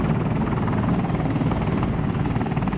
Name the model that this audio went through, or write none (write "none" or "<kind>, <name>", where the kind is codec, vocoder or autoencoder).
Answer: none